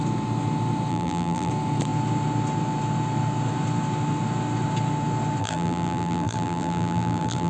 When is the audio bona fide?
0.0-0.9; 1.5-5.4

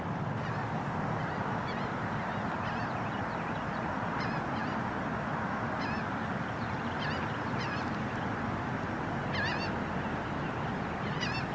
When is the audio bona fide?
0.0-11.5

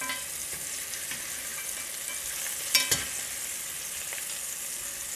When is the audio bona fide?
0.0-0.4; 1.1-5.2

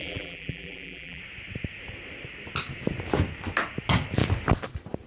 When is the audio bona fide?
1.2-5.1